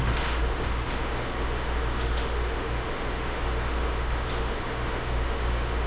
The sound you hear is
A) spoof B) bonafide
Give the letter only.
A